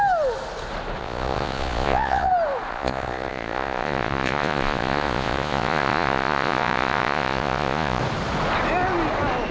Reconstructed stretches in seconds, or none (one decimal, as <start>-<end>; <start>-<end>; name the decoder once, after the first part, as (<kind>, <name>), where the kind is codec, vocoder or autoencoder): 1.0-2.3 (vocoder, Vocos); 2.7-8.0